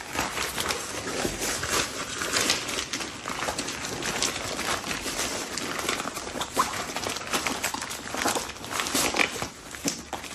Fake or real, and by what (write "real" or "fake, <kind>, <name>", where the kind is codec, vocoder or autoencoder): real